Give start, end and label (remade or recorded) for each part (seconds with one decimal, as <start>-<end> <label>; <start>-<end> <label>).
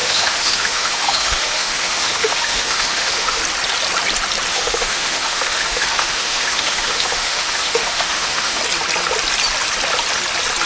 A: 0.0-3.4 remade; 3.4-4.5 recorded; 4.5-8.6 remade; 8.6-10.7 recorded